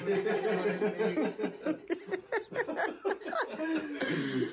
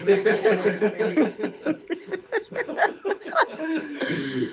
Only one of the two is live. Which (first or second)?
first